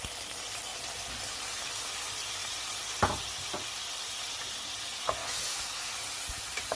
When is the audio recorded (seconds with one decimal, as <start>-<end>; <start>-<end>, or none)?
0.0-5.2; 5.9-6.7